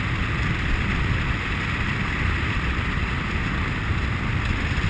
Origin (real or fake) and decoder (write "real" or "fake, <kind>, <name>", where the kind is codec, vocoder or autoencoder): real